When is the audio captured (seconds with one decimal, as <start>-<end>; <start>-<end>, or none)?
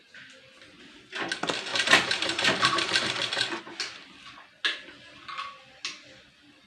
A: 0.0-1.7; 3.6-6.7